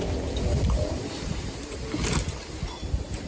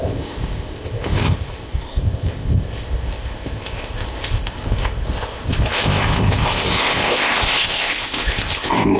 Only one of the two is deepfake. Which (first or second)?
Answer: second